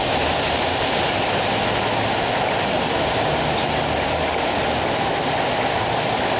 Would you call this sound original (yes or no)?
yes